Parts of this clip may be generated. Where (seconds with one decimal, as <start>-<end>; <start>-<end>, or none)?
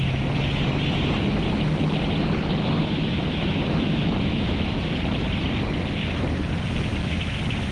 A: 3.1-4.9; 6.9-7.7